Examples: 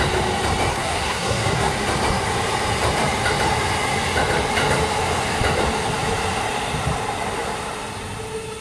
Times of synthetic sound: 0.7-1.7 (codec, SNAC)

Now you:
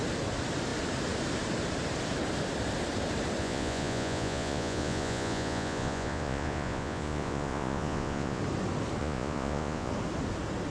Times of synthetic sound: 3.4-8.4 (vocoder, Vocos); 9.0-9.9

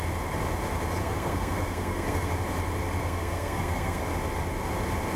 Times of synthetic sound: 1.0-2.3 (codec, SNAC); 3.0-4.0

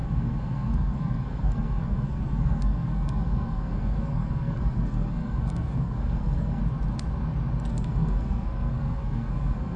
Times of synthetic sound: 0.0-6.6 (codec, SNAC); 7.7-9.8